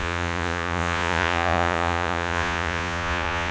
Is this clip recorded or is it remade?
remade